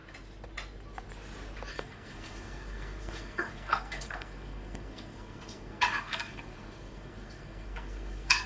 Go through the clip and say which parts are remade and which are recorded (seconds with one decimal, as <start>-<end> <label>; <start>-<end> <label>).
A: 0.0-1.7 recorded; 1.7-8.5 remade